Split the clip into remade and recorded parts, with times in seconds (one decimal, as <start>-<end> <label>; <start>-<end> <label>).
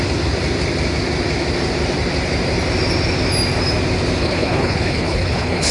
0.0-4.2 recorded; 4.2-5.7 remade